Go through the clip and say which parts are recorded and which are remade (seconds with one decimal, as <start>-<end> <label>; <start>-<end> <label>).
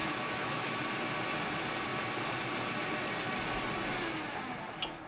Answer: 0.0-0.8 remade; 0.8-5.1 recorded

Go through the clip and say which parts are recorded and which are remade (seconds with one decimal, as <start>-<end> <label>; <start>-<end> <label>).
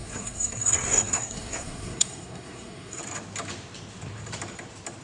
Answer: 0.0-3.0 remade; 3.0-5.0 recorded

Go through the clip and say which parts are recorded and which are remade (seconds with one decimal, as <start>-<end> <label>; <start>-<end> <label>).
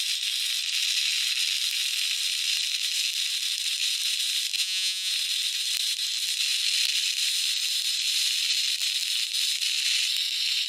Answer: 0.0-4.6 recorded; 4.6-5.1 remade; 5.1-10.7 recorded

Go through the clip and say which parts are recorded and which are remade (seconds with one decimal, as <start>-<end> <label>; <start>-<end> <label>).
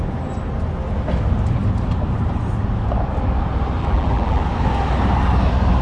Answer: 0.0-3.8 recorded; 3.8-4.4 remade; 4.4-5.8 recorded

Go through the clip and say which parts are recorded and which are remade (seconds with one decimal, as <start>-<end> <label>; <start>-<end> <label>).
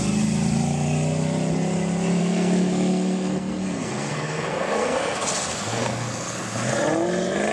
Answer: 0.0-2.2 recorded; 2.2-6.7 remade; 6.7-7.5 recorded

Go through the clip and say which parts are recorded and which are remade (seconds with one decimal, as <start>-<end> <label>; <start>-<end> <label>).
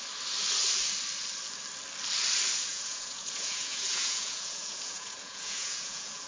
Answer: 0.0-2.7 recorded; 2.7-6.3 remade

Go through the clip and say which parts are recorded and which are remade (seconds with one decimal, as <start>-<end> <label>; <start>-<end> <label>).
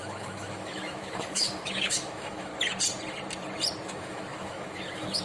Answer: 0.0-2.5 remade; 2.5-3.9 recorded; 3.9-5.2 remade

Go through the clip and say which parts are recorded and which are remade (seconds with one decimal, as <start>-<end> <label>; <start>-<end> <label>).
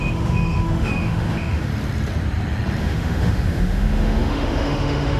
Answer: 0.0-1.7 remade; 1.7-2.8 recorded; 2.8-5.2 remade